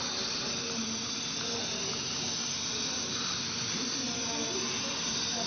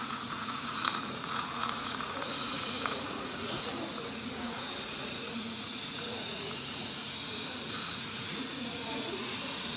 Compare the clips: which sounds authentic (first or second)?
first